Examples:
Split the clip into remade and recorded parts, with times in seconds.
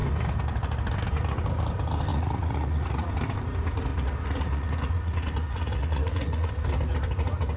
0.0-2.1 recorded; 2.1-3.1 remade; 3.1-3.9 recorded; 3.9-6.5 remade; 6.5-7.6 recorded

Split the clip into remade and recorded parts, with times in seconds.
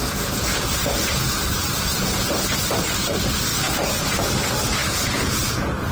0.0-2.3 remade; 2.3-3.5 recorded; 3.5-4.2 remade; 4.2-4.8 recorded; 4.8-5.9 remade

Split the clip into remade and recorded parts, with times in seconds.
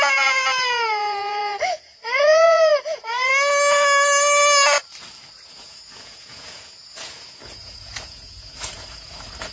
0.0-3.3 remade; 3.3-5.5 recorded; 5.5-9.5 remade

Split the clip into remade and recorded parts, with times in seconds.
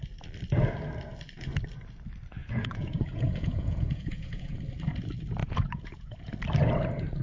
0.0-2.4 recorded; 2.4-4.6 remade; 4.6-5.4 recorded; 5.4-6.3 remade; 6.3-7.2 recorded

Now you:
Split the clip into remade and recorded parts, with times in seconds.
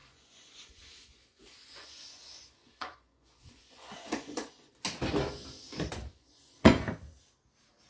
0.0-4.7 remade; 4.7-6.1 recorded; 6.1-6.8 remade; 6.8-7.9 recorded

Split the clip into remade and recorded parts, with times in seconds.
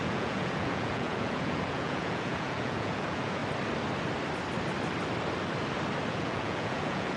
0.0-3.4 remade; 3.4-6.1 recorded; 6.1-7.2 remade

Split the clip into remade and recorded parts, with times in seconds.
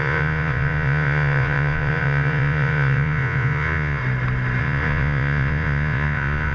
0.0-4.0 remade; 4.0-4.6 recorded; 4.6-6.5 remade